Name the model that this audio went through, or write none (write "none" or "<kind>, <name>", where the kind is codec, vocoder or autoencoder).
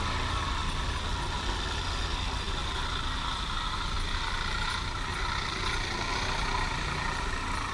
none